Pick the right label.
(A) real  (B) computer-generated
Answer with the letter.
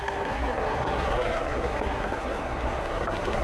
B